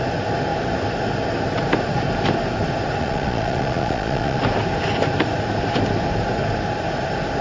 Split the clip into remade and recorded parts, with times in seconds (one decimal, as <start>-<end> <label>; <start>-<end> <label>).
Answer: 0.0-3.0 recorded; 3.0-4.4 remade; 4.4-7.4 recorded